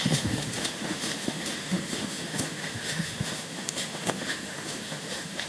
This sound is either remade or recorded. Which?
remade